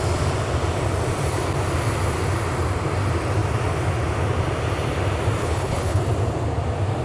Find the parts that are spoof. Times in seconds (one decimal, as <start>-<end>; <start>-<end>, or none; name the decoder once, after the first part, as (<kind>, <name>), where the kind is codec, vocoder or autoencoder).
5.4-6.0 (codec, HILCodec)